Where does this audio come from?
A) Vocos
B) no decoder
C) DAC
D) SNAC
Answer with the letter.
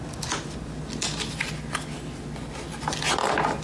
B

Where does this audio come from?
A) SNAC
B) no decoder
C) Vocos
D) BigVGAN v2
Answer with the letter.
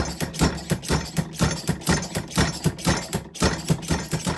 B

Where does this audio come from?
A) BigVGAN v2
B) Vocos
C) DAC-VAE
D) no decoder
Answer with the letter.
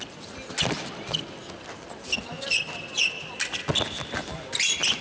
D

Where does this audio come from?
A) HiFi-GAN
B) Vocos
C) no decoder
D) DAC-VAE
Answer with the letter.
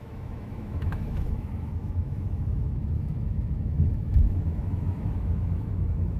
D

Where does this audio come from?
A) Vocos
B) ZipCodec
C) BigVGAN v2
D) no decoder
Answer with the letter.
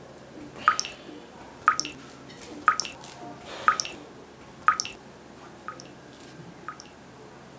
D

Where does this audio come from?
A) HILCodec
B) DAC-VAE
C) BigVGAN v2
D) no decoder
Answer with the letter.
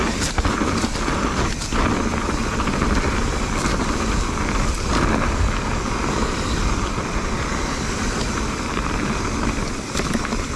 D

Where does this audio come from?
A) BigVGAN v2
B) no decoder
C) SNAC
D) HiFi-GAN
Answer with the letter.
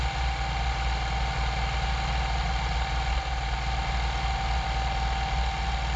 B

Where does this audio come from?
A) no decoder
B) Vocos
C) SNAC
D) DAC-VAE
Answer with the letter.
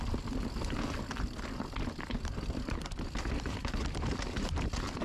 A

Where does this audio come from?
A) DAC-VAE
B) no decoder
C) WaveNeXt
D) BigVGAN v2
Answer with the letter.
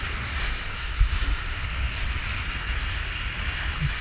B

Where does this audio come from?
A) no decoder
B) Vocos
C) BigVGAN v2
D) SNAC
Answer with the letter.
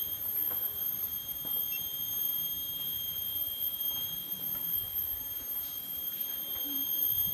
C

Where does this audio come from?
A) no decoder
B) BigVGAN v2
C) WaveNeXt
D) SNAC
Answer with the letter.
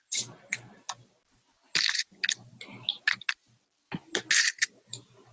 A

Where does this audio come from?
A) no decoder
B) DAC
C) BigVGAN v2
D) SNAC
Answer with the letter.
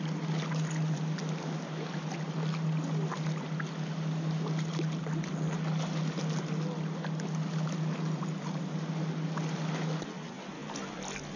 A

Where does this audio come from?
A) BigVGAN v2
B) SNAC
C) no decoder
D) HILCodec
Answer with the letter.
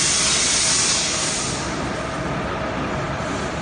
C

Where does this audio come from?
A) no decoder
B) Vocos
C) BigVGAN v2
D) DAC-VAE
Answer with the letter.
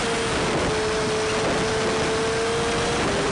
A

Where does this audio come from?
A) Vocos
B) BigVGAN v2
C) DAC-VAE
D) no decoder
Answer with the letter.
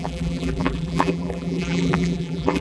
B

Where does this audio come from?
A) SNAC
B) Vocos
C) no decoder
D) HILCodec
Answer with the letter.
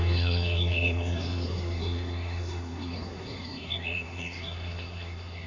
A